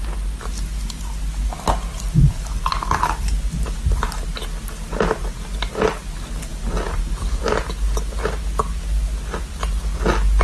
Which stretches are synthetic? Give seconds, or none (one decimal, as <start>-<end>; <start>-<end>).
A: none